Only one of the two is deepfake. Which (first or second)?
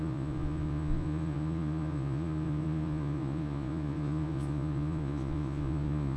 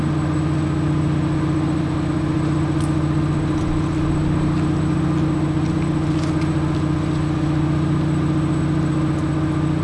first